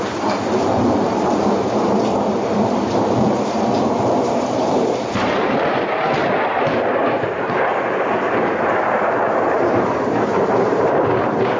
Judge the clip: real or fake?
fake